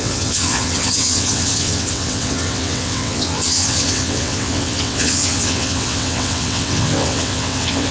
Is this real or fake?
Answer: fake